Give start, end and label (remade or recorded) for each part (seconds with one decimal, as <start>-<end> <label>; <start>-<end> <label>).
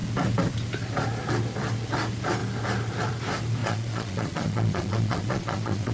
0.0-3.6 recorded; 3.6-5.9 remade